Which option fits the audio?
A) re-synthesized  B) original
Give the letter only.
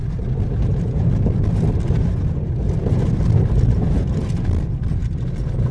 B